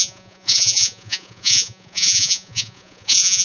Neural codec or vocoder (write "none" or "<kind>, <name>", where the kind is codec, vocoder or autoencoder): vocoder, Vocos